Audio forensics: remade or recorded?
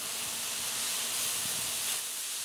recorded